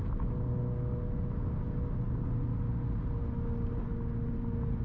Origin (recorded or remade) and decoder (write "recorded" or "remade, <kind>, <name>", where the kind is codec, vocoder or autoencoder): recorded